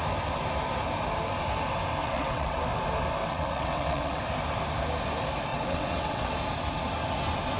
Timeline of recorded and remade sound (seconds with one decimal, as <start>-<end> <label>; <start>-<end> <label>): 0.0-2.0 recorded; 2.0-2.6 remade; 2.6-3.2 recorded; 3.2-4.2 remade; 4.2-5.5 recorded; 5.5-6.3 remade; 6.3-7.6 recorded